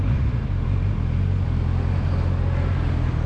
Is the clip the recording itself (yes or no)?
yes